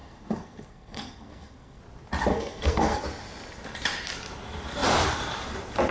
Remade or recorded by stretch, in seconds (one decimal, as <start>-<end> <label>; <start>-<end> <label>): 0.0-1.8 remade; 1.8-2.3 recorded; 2.3-3.0 remade; 3.0-5.9 recorded